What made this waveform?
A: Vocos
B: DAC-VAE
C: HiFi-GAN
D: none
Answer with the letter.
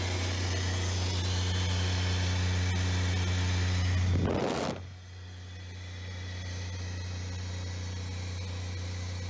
D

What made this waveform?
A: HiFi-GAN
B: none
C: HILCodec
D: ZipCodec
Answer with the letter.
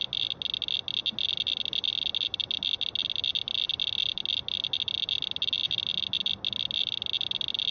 B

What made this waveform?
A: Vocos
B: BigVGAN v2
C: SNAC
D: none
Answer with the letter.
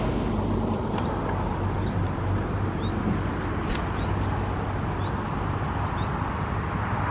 D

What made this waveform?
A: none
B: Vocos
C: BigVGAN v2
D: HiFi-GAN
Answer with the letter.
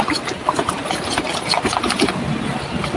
A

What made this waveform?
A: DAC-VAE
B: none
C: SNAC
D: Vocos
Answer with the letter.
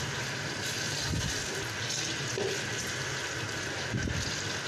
B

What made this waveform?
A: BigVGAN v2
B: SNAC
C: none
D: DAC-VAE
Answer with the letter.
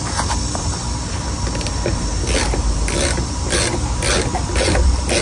C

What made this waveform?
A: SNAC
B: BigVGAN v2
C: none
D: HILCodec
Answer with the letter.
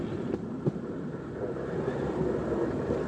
C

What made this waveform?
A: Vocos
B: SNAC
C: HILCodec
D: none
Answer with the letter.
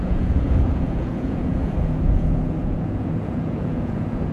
A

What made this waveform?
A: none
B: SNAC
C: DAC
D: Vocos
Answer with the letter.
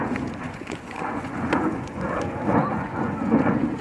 D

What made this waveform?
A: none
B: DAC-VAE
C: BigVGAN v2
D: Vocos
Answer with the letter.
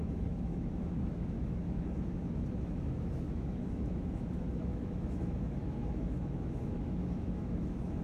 B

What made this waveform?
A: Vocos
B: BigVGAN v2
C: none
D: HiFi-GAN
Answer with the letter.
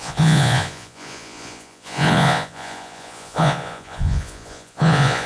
A